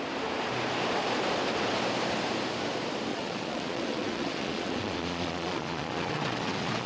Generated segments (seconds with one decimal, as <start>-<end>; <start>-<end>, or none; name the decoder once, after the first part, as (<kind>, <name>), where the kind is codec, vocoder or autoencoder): 3.1-6.9 (vocoder, Vocos)